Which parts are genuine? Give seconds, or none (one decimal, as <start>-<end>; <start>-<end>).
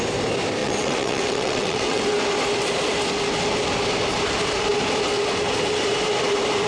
0.0-0.6; 2.0-6.7